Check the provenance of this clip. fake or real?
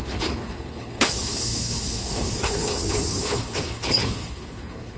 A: fake